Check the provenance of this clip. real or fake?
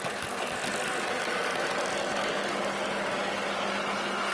real